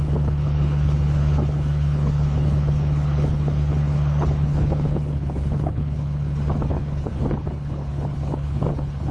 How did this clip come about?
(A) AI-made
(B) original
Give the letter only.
A